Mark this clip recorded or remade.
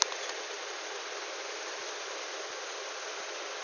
recorded